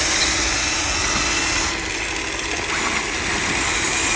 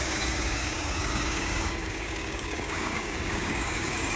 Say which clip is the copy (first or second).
second